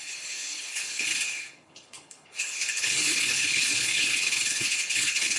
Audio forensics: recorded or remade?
remade